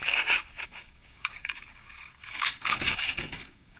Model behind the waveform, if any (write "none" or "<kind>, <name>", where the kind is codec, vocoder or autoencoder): codec, DAC